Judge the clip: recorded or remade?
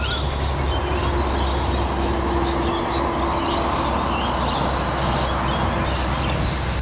recorded